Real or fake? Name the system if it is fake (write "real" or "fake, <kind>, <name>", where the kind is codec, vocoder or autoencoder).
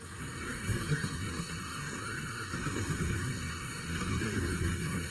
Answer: fake, codec, SNAC